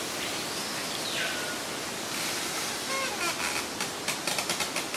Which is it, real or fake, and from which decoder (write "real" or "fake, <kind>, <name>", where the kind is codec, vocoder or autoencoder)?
real